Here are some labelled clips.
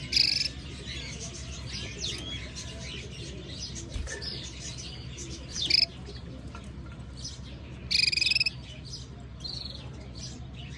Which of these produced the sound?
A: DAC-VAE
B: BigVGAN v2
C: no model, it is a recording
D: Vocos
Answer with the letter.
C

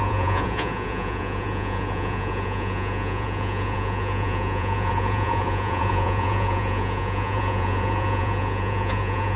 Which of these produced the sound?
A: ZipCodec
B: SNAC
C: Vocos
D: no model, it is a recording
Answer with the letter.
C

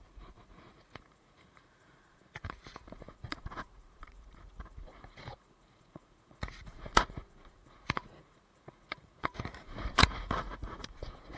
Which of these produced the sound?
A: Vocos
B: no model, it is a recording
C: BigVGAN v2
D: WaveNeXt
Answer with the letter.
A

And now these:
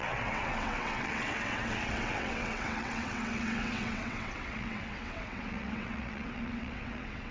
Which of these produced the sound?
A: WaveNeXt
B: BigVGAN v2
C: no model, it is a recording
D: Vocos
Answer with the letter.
A